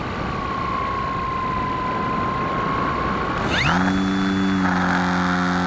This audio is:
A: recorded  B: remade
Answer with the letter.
A